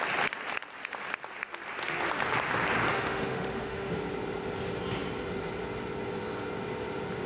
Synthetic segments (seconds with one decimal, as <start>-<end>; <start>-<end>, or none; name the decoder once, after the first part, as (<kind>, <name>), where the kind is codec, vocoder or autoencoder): 2.9-3.9 (autoencoder, DAC-VAE)